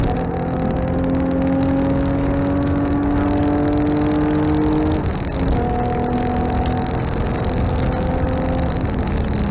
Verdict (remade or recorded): recorded